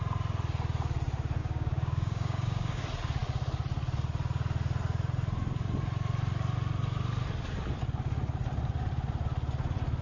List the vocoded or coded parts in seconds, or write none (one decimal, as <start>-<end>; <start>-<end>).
1.4-2.8